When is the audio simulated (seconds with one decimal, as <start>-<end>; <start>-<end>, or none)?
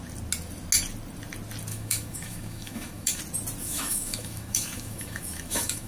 1.7-3.2; 3.6-5.9